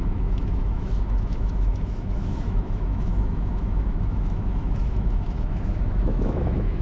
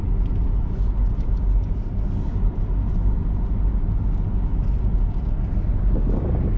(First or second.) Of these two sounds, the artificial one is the first